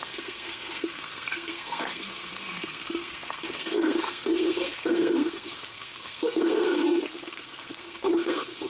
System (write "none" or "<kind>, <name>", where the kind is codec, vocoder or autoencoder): codec, SNAC